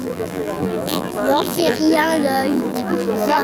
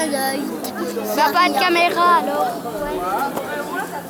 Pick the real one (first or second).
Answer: second